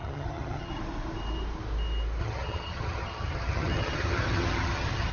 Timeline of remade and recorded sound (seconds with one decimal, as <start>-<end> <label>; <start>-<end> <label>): 0.0-0.7 remade; 0.7-2.2 recorded; 2.2-5.1 remade